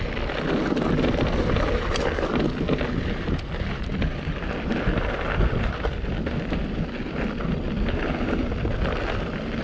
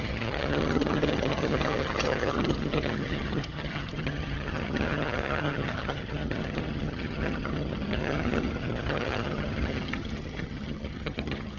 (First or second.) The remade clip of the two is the second